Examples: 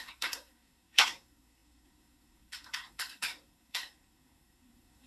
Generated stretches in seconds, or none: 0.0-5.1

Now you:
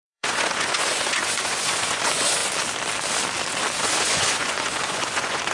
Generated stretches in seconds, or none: 0.0-2.4; 3.8-5.5

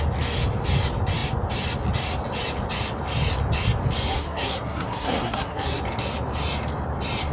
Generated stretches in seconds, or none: 4.1-5.8

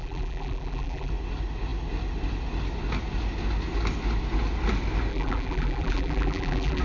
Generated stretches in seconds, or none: 0.0-1.1; 5.1-6.8

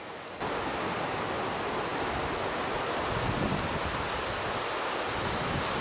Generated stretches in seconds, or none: none

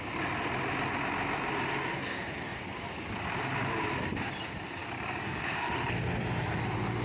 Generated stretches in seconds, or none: 4.8-5.7